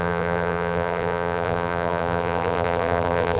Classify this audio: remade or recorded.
remade